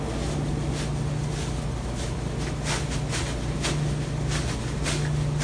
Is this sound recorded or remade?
recorded